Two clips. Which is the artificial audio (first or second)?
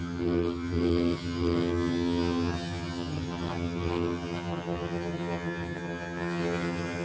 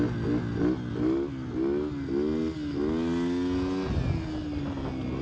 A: first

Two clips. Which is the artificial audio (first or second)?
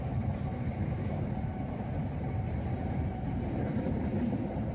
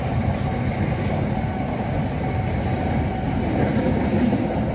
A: first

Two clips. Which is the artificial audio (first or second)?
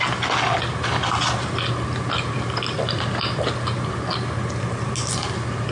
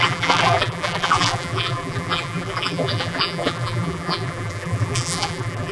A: second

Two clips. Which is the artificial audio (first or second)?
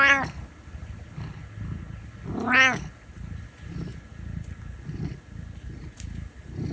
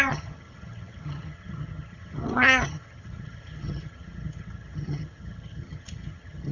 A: second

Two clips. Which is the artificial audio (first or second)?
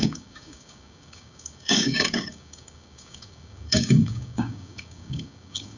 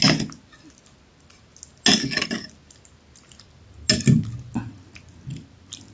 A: first